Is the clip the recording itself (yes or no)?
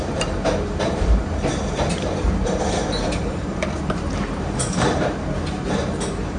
no